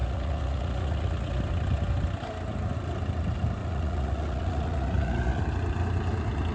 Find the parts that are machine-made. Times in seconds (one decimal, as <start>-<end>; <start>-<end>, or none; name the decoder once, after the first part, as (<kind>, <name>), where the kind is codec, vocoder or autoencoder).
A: 0.0-1.4 (vocoder, Vocos); 3.6-5.4